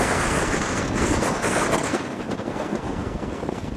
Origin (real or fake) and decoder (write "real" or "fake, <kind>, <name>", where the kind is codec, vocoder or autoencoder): fake, codec, SNAC